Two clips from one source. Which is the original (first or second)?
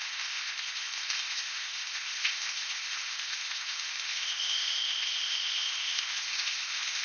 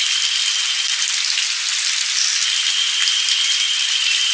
second